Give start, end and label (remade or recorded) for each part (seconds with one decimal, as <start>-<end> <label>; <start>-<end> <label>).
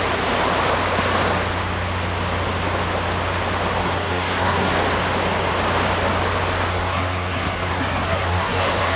0.0-3.8 recorded; 3.8-4.7 remade; 4.7-6.7 recorded; 6.7-9.0 remade